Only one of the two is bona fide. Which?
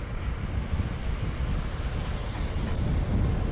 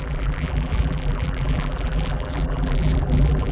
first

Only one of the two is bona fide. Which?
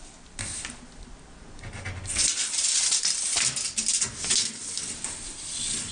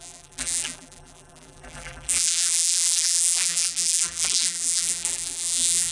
first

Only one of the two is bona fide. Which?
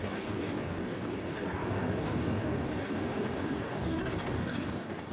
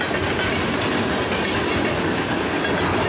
second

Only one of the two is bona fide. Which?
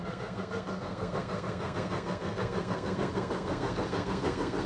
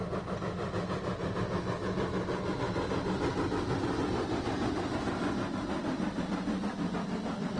second